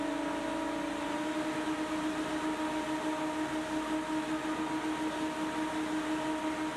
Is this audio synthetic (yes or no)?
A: no